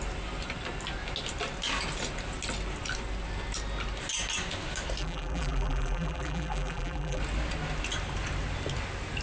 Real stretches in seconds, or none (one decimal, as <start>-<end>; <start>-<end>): 0.0-5.0; 7.2-9.2